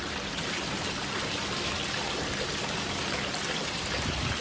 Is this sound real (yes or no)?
yes